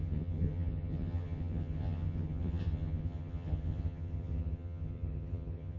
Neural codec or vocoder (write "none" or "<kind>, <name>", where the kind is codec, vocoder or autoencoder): vocoder, HiFi-GAN